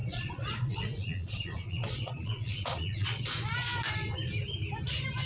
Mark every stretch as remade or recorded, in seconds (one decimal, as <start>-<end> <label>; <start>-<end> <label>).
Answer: 0.0-3.2 remade; 3.2-5.3 recorded